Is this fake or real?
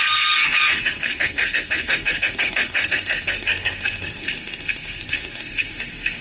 fake